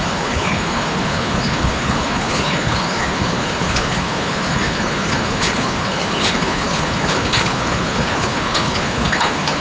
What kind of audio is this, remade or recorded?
remade